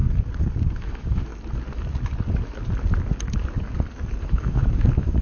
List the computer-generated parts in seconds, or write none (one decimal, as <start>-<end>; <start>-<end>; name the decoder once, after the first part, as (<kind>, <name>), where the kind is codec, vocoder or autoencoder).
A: 0.8-1.3 (autoencoder, DAC-VAE); 4.2-5.2